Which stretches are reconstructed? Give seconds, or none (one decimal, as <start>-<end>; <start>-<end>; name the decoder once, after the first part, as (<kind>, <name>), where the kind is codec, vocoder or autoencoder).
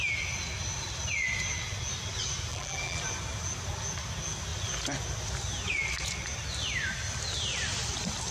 2.5-3.0 (vocoder, BigVGAN v2)